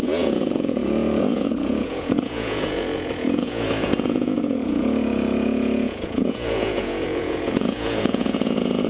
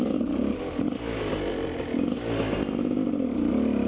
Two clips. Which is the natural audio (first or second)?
second